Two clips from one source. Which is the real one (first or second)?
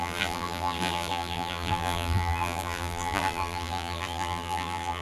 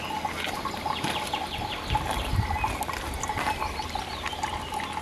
second